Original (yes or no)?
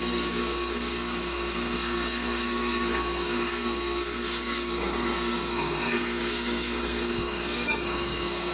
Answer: no